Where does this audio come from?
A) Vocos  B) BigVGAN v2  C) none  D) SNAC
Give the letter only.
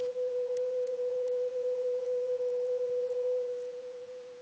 A